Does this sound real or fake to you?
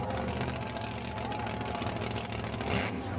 real